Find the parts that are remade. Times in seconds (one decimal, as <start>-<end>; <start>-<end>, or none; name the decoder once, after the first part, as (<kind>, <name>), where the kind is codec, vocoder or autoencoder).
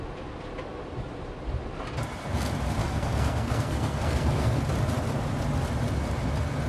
2.8-4.6 (codec, SNAC)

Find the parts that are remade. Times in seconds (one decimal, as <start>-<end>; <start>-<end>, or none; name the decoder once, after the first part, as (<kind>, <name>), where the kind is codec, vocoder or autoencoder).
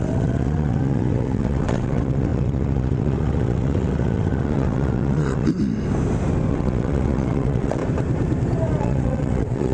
0.0-5.5 (vocoder, WaveNeXt); 6.5-7.8; 8.8-9.7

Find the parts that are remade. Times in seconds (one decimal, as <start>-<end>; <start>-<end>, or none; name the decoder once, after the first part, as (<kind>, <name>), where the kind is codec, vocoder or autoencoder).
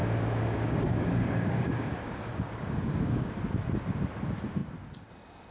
0.0-3.3 (codec, DAC)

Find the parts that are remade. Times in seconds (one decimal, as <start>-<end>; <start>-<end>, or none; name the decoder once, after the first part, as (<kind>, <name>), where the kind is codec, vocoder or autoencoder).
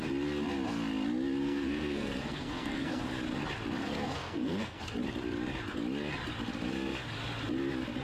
1.4-3.0 (codec, SNAC); 3.8-4.8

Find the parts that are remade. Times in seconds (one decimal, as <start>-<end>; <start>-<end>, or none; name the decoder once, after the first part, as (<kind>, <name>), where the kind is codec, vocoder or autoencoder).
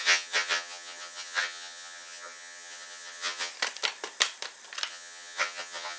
0.0-3.5 (vocoder, HiFi-GAN); 4.9-6.0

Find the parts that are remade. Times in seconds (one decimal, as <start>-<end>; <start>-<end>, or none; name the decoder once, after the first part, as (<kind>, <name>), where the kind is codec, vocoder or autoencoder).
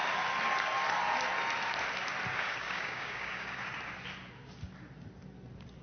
2.3-3.6 (codec, DAC)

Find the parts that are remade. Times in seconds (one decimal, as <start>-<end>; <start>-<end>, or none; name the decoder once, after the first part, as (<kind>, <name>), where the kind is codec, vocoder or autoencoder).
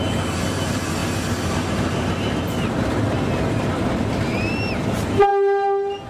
none